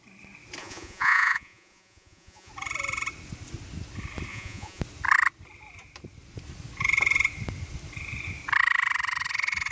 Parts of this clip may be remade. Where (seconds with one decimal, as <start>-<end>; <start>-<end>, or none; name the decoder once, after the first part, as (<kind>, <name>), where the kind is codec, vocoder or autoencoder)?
0.6-2.5 (vocoder, Vocos); 4.3-4.8